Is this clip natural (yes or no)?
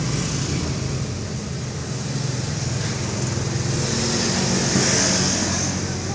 yes